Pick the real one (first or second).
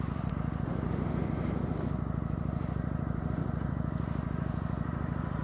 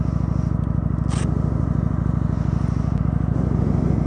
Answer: second